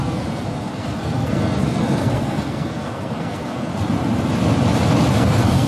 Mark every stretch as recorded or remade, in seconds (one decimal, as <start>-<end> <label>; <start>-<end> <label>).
0.0-3.7 remade; 3.7-5.1 recorded; 5.1-5.7 remade